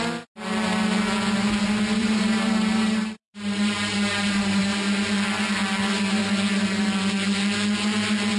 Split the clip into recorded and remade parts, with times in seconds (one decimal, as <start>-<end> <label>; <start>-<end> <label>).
0.0-2.0 recorded; 2.0-4.6 remade; 4.6-8.4 recorded